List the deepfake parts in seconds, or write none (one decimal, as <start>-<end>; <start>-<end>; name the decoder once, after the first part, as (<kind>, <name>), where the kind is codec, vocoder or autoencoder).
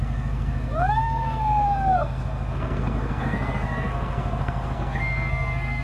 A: 0.0-5.8 (codec, SNAC)